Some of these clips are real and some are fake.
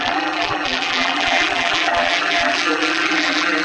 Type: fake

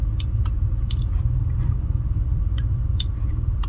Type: fake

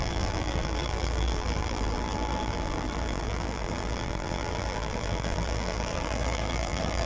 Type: fake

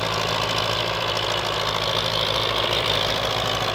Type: real